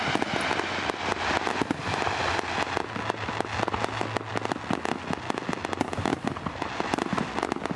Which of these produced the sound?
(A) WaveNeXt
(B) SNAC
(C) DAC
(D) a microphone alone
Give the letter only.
D